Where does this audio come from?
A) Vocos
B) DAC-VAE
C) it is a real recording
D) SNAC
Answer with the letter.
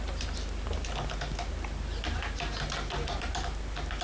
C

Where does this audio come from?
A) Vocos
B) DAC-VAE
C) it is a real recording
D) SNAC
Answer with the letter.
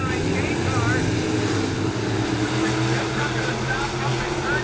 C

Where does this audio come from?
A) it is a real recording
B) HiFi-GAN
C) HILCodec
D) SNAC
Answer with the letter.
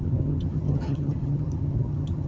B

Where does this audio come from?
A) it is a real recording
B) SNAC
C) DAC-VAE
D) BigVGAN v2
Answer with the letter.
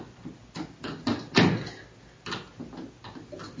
A